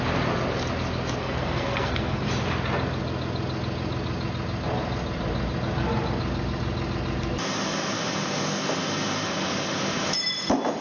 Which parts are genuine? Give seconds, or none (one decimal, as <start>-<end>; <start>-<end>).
0.0-1.2; 2.2-10.8